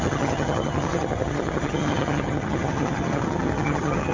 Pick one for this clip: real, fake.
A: fake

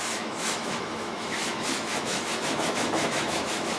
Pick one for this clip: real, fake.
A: fake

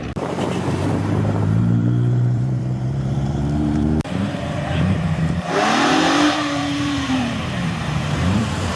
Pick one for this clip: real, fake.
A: fake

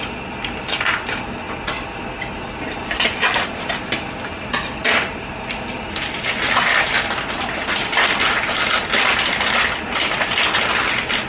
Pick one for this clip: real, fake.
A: real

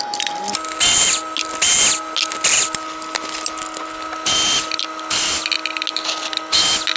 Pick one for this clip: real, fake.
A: real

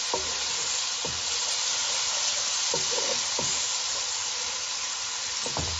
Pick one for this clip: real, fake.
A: real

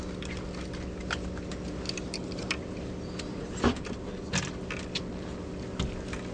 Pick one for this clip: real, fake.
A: real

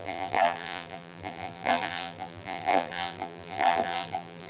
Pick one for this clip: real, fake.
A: fake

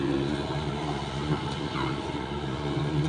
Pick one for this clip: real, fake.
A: fake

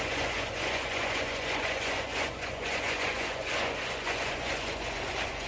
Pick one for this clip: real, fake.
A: fake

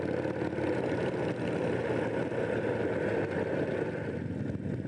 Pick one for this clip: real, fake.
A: real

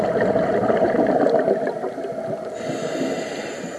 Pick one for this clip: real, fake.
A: real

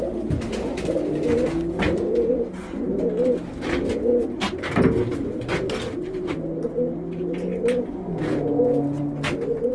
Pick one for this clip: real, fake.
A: real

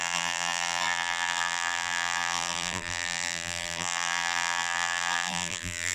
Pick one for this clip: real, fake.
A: fake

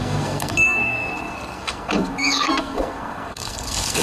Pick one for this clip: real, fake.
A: fake